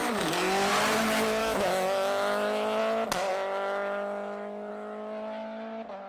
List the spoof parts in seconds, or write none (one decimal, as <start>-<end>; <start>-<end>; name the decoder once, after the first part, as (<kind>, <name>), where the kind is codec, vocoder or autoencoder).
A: 1.4-2.8 (autoencoder, DAC-VAE); 3.3-4.7